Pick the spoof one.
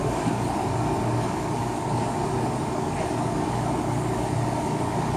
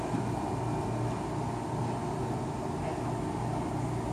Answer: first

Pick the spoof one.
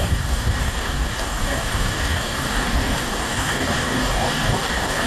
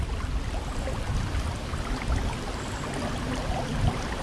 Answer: first